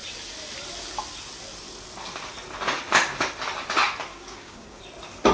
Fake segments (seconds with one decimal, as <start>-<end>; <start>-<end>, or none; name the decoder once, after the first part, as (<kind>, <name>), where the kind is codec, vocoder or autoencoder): 4.1-4.8 (codec, DAC)